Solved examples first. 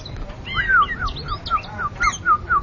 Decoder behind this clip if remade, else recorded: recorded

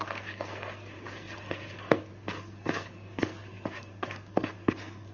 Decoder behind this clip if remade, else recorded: remade, codec, SNAC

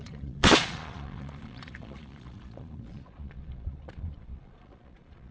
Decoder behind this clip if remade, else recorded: remade, vocoder, Vocos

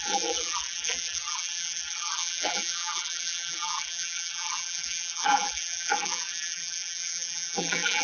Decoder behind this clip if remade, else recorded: remade, vocoder, BigVGAN v2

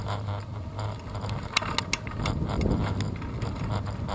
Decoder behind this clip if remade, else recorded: recorded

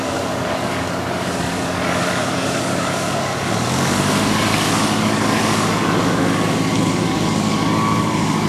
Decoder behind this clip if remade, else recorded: remade, codec, DAC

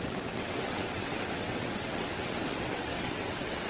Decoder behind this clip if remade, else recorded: remade, vocoder, WaveNeXt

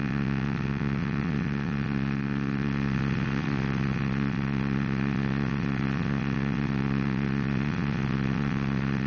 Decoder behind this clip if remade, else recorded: remade, vocoder, WaveNeXt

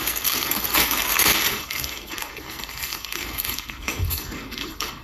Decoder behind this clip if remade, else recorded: remade, codec, SNAC